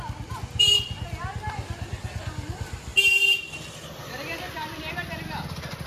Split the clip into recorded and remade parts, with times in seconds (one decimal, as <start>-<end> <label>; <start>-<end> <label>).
0.0-5.9 recorded